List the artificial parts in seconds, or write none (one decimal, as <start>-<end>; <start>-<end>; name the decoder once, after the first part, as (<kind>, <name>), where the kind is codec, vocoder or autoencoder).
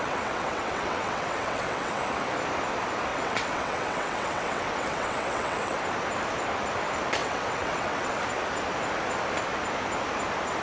0.0-2.0 (vocoder, WaveNeXt); 3.1-5.8; 7.2-8.2